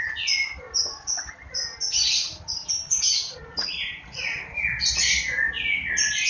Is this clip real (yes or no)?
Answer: yes